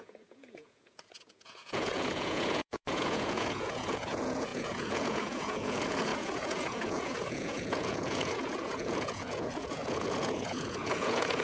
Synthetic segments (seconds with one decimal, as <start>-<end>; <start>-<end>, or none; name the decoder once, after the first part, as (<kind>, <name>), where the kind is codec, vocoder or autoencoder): 0.0-11.4 (vocoder, Vocos)